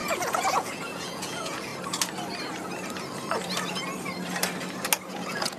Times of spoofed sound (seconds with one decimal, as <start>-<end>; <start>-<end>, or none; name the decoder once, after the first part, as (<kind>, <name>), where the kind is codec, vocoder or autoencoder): 0.0-1.7 (vocoder, Vocos); 5.1-5.6